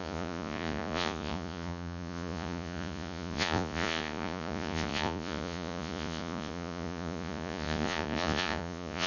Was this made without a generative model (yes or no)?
no